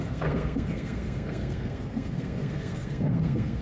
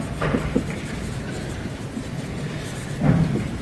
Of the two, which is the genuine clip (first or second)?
second